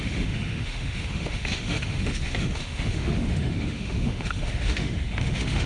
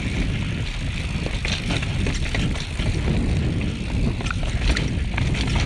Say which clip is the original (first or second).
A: second